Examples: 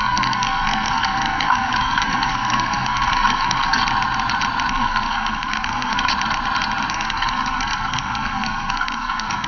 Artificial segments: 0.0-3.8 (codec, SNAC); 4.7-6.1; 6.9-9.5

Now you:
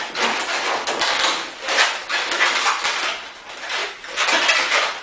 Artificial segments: none

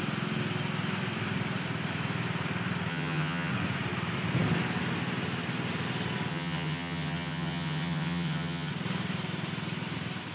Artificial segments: 2.9-3.5 (vocoder, HiFi-GAN); 6.3-8.7

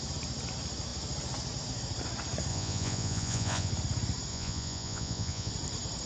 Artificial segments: 2.5-3.7 (vocoder, Vocos); 4.3-5.5

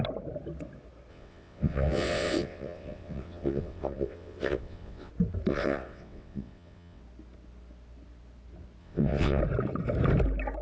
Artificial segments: 1.1-5.1 (vocoder, WaveNeXt); 5.5-7.0; 8.8-9.4

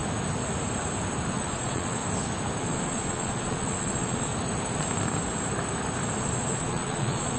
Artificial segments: 1.3-2.0 (vocoder, Vocos); 2.6-4.3; 6.2-7.4

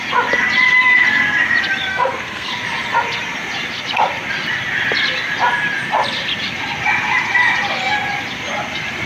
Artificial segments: 1.9-2.5 (codec, SNAC)

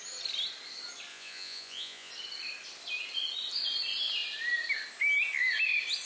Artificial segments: 1.1-2.1 (vocoder, Vocos)